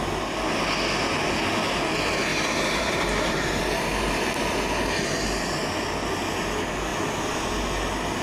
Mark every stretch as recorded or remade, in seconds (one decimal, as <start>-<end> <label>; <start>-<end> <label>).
0.0-2.3 recorded; 2.3-3.6 remade; 3.6-8.2 recorded